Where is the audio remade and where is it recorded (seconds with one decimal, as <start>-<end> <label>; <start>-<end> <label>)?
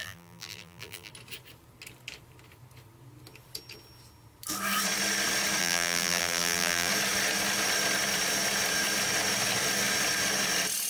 0.0-1.1 remade; 1.1-5.6 recorded; 5.6-6.9 remade; 6.9-10.9 recorded